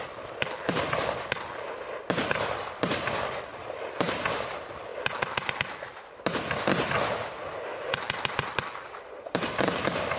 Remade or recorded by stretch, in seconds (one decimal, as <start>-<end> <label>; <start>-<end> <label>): 0.0-10.2 recorded